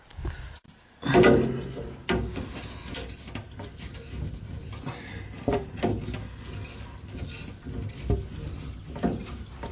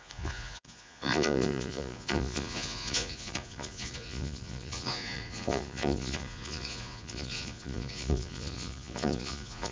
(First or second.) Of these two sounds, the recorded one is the first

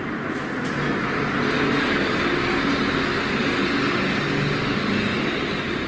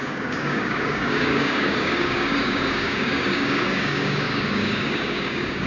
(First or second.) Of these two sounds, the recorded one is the first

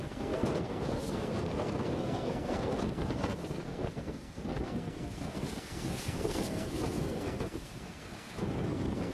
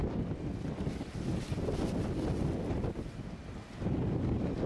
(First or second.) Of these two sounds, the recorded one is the second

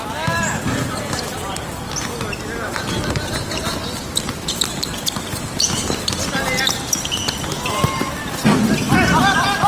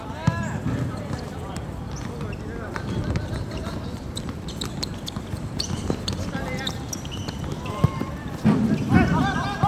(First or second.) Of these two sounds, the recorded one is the first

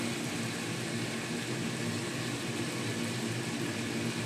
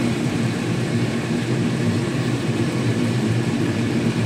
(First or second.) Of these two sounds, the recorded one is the first